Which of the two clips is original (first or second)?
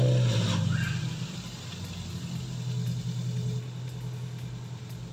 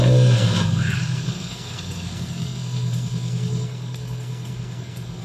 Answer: first